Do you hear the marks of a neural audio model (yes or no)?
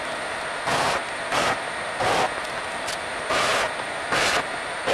no